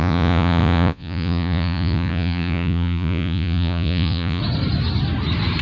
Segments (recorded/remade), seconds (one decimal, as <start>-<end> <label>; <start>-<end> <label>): 0.0-4.4 remade; 4.4-5.6 recorded